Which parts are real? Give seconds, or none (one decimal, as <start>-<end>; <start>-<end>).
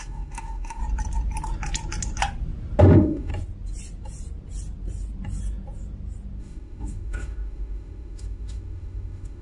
0.8-2.8; 3.3-6.4